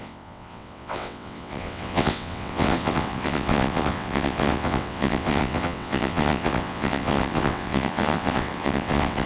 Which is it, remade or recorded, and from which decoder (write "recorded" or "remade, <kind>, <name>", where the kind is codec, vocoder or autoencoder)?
remade, vocoder, WaveNeXt